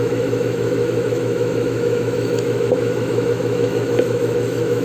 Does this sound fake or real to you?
fake